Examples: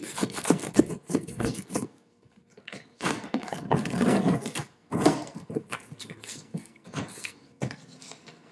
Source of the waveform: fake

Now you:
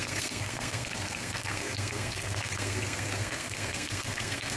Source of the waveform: fake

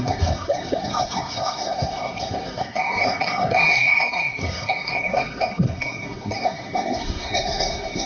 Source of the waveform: fake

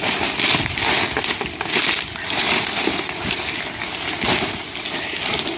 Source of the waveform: real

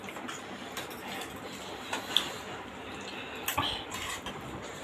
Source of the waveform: real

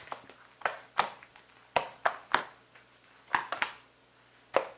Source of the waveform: real